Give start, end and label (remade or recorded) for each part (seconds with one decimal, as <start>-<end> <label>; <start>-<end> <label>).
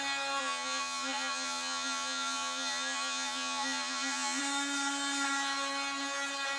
0.0-0.4 recorded; 0.4-4.4 remade; 4.4-6.6 recorded